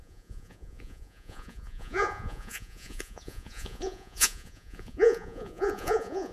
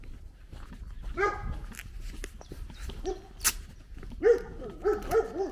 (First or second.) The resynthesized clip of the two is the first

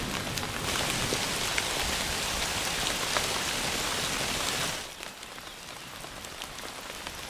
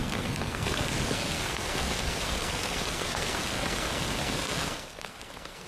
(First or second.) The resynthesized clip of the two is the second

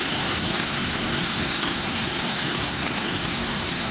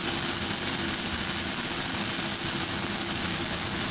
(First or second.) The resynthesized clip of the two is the first